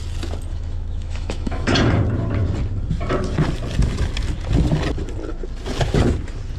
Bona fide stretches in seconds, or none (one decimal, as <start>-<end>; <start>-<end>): 0.0-0.5; 1.7-6.6